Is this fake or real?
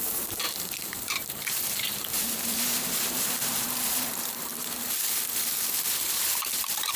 fake